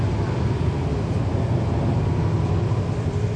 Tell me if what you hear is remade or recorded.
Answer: recorded